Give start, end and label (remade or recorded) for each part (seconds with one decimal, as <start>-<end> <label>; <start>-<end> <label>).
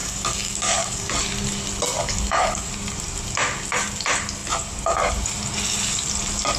0.0-1.1 remade; 1.1-2.0 recorded; 2.0-2.7 remade; 2.7-6.6 recorded